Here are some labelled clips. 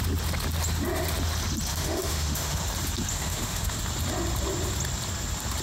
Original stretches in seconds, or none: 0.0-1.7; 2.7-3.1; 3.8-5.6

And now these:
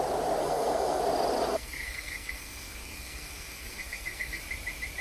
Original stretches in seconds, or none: 0.0-0.4; 1.0-1.5; 4.4-5.0

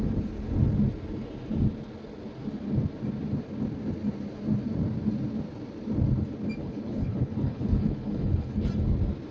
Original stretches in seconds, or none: 0.0-6.6; 8.7-9.3

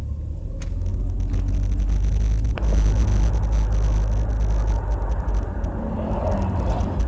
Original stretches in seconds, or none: 0.0-7.1

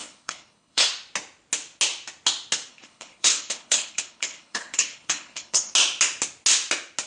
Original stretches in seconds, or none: 0.9-2.7; 5.7-7.1

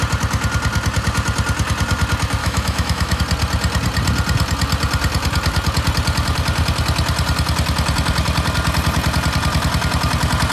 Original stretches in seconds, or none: 0.0-2.4; 3.2-10.5